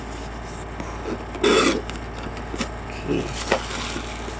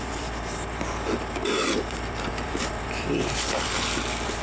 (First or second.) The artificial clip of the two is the second